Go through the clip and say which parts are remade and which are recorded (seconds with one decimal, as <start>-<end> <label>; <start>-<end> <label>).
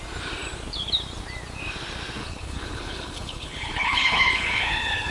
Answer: 0.0-2.2 recorded; 2.2-5.1 remade